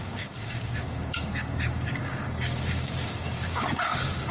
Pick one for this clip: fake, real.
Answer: fake